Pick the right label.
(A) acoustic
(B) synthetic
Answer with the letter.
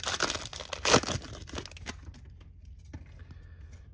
A